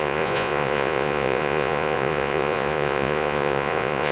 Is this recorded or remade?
remade